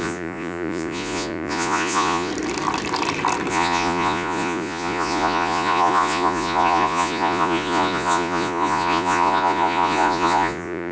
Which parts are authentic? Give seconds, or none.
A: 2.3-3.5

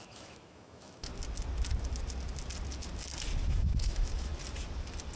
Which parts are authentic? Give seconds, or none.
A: 1.1-3.5; 4.3-5.2

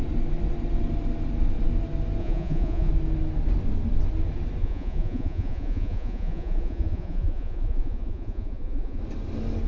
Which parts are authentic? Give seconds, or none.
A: 0.0-2.2; 2.9-4.6; 9.0-9.7

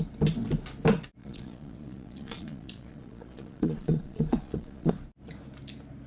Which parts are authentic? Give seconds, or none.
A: 0.0-1.2; 4.9-6.1

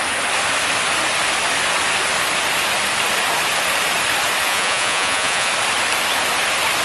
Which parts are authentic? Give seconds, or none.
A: 0.0-4.4; 5.5-6.8